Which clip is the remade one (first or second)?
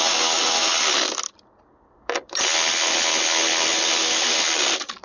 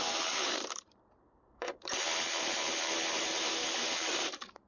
second